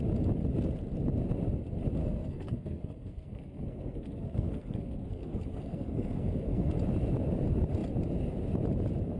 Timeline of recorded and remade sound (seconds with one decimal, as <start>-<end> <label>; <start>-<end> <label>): 0.0-2.0 recorded; 2.0-6.7 remade; 6.7-9.2 recorded